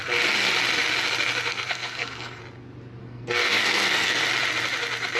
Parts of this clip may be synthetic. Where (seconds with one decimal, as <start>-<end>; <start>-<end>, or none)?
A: 1.5-2.4; 3.0-4.2